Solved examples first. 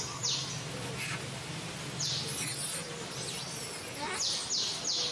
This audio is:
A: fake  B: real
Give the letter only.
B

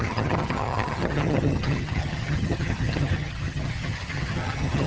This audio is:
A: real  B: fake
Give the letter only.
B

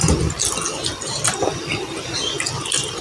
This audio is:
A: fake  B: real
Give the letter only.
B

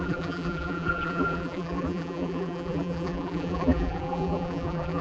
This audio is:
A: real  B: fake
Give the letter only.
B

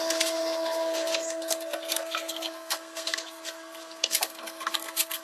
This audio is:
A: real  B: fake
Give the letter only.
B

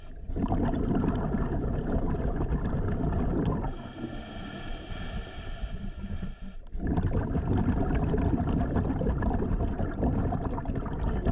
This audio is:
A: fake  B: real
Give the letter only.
B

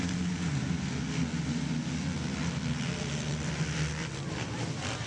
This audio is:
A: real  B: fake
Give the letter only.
A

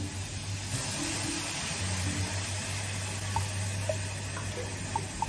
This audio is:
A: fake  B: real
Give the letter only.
B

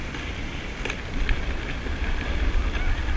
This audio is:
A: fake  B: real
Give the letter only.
B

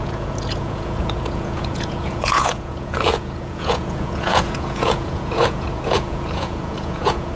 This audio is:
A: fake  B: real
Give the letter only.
A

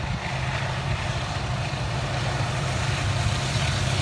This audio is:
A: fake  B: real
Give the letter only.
A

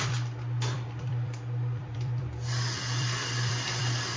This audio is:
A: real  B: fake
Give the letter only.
B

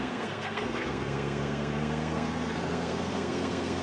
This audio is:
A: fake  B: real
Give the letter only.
A